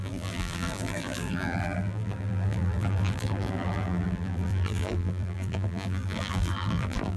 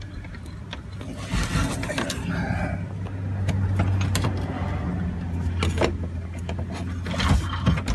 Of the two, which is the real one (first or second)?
second